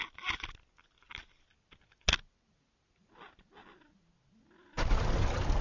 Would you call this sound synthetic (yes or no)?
no